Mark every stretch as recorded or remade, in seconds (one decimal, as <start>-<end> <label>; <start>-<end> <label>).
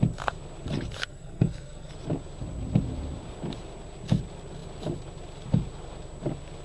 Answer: 0.0-1.0 recorded; 1.0-1.9 remade; 1.9-6.6 recorded